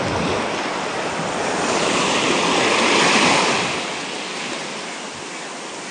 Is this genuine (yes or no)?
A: yes